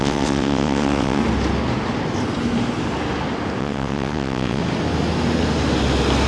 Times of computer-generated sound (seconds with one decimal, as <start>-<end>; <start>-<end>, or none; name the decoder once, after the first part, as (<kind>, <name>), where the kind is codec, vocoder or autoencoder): 0.0-1.2 (vocoder, WaveNeXt); 3.6-4.6